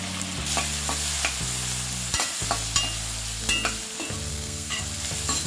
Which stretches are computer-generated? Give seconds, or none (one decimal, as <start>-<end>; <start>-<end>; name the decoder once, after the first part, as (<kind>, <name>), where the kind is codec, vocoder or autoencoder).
4.3-4.8 (codec, SNAC)